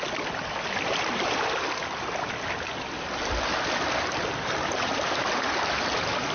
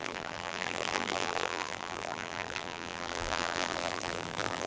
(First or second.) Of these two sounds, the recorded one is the first